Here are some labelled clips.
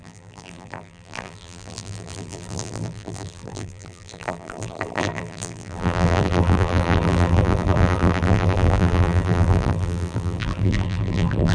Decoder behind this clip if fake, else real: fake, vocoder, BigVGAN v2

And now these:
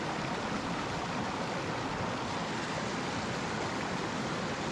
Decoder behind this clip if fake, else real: real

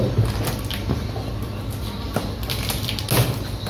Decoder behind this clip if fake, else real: real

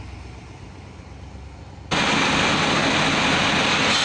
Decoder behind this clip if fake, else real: real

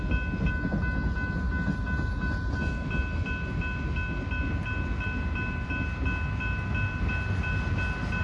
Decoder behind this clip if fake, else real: real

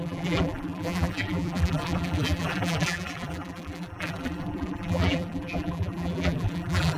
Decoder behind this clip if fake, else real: fake, vocoder, BigVGAN v2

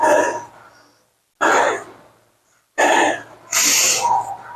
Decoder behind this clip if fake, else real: real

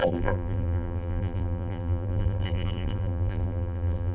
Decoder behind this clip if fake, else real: fake, vocoder, BigVGAN v2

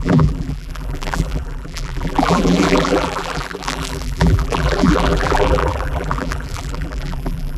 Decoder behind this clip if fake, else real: fake, vocoder, BigVGAN v2